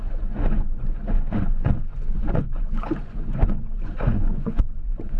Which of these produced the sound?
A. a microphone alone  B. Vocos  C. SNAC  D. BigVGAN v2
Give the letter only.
B